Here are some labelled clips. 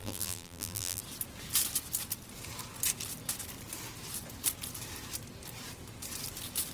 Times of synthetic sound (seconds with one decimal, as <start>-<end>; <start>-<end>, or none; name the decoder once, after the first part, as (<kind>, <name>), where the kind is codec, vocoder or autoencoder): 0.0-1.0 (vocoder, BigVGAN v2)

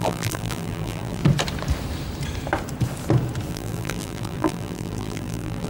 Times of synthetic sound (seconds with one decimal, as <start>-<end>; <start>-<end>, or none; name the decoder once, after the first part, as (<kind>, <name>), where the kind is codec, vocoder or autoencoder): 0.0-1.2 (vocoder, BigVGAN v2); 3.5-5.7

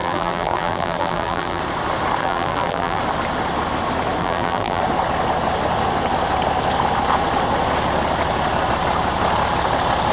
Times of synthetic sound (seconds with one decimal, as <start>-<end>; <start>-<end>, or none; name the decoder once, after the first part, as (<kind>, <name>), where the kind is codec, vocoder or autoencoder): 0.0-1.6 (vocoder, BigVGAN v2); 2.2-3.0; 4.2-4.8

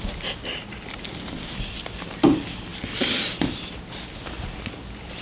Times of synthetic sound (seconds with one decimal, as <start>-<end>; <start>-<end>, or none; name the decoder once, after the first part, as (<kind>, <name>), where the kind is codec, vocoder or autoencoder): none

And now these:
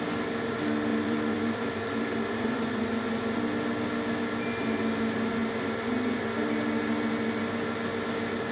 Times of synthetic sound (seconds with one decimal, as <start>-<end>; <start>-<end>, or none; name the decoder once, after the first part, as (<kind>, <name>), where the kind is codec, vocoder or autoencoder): 0.9-2.9 (vocoder, BigVGAN v2)